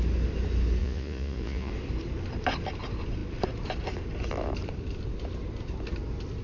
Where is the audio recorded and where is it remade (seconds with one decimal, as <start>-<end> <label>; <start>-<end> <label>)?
0.0-0.8 recorded; 0.8-1.7 remade; 1.7-6.4 recorded